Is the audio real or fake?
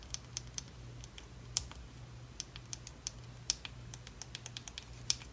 real